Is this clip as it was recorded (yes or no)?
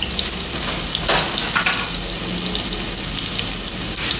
yes